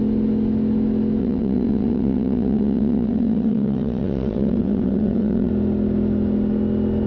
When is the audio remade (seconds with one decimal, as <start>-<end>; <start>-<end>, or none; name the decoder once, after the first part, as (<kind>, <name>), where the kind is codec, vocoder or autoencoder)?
1.2-5.5 (vocoder, WaveNeXt)